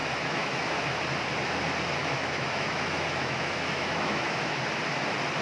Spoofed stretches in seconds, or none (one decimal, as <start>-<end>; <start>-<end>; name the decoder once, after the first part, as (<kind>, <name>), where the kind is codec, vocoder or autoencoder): 0.0-1.0 (autoencoder, DAC-VAE); 2.0-4.6

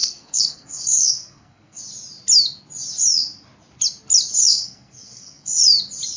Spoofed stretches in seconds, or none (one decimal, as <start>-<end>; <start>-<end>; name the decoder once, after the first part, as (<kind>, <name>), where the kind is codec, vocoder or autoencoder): 0.0-1.8 (codec, SNAC); 4.5-5.6

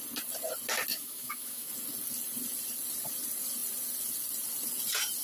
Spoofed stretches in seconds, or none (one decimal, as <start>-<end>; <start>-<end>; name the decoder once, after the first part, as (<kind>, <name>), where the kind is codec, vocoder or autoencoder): 0.9-1.7 (autoencoder, DAC-VAE)

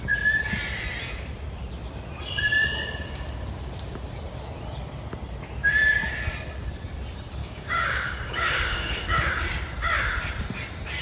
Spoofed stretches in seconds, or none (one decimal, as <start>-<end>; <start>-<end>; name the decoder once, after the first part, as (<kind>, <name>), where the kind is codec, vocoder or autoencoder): 7.4-9.3 (codec, DAC)

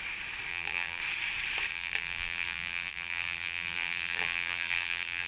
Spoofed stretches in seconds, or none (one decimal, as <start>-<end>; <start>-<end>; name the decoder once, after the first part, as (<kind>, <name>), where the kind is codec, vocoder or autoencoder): 0.5-1.0 (vocoder, BigVGAN v2); 1.7-5.3